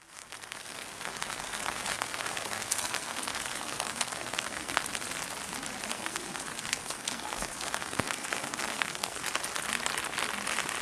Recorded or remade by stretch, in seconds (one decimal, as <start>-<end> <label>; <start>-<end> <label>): 0.0-4.8 remade; 4.8-5.9 recorded; 5.9-9.2 remade; 9.2-10.8 recorded